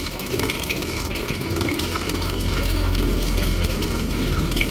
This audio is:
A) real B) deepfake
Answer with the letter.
B